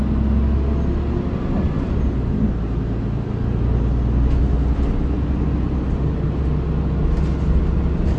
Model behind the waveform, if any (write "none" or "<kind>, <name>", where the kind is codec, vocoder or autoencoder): none